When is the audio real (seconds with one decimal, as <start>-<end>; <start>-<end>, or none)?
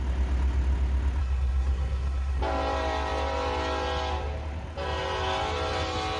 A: 0.0-1.2; 2.4-6.2